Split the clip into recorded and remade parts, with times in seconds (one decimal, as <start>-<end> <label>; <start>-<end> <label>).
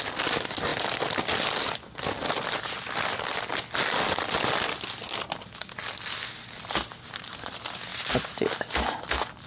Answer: 0.0-9.5 recorded